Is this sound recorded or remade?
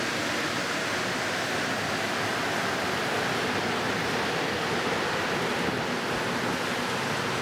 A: recorded